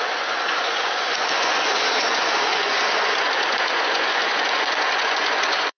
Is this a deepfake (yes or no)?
yes